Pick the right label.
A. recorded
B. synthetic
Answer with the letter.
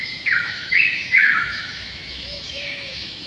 B